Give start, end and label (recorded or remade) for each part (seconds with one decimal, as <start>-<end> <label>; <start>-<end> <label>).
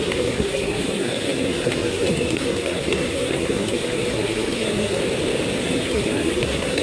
0.0-5.0 remade; 5.0-5.6 recorded; 5.6-6.8 remade